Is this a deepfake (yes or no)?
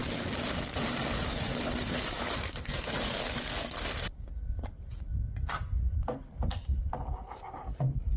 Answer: no